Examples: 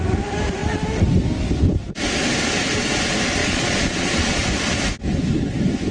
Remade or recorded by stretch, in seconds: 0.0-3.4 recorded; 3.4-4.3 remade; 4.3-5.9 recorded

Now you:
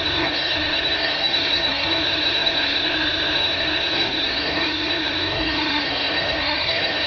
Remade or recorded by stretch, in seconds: 0.0-7.1 remade

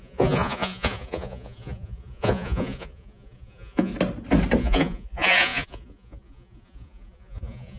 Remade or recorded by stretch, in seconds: 0.0-3.9 remade; 3.9-4.6 recorded; 4.6-7.8 remade

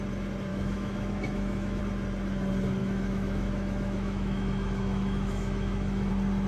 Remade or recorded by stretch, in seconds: 0.0-0.5 recorded; 0.5-1.8 remade; 1.8-2.8 recorded; 2.8-6.1 remade; 6.1-6.5 recorded

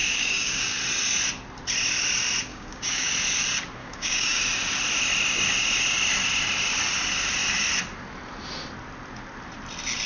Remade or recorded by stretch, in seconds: 0.0-0.8 remade; 0.8-2.5 recorded; 2.5-3.1 remade; 3.1-3.8 recorded; 3.8-4.4 remade; 4.4-10.1 recorded

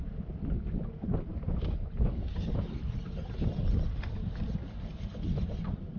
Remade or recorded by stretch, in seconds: 0.0-6.0 recorded

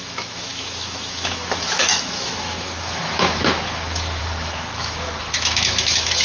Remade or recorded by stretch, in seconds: 0.0-6.2 remade

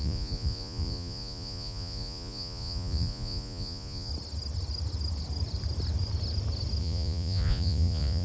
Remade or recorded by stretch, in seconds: 0.0-4.1 remade; 4.1-6.8 recorded; 6.8-8.2 remade